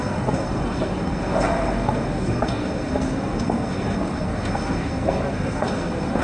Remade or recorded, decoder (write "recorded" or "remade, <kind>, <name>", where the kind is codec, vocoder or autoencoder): remade, codec, SNAC